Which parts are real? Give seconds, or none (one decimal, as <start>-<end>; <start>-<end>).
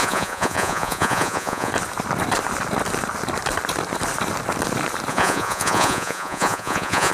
1.7-5.1